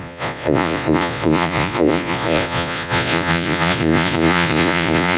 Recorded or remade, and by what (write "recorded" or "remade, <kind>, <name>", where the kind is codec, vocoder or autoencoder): remade, vocoder, Vocos